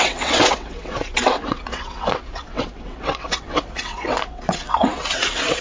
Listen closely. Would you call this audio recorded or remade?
remade